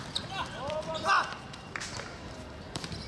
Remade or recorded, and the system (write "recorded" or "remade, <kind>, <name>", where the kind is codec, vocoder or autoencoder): remade, vocoder, BigVGAN v2